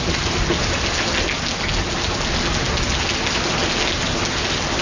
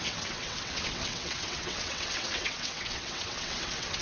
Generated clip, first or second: second